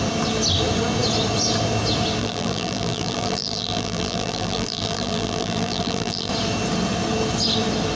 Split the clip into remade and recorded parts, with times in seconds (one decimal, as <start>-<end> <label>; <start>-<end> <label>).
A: 0.0-2.2 recorded; 2.2-6.3 remade; 6.3-8.0 recorded